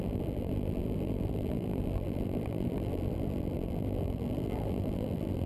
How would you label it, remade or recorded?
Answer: remade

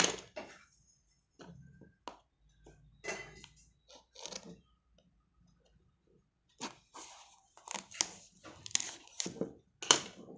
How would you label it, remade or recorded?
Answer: recorded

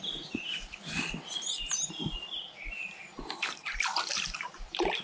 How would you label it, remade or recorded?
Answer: remade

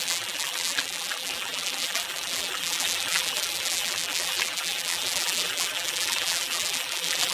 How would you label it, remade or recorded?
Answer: remade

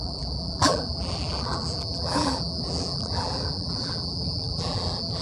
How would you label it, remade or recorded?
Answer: remade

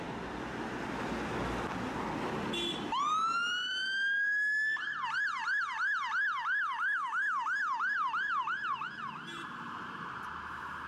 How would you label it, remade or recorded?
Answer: recorded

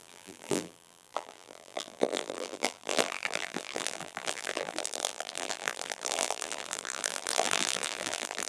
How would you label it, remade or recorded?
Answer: remade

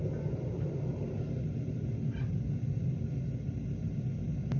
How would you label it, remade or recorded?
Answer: recorded